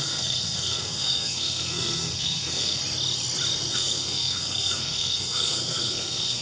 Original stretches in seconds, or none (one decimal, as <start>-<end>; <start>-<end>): 2.8-3.7